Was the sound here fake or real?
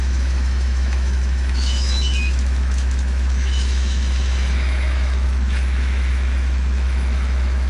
fake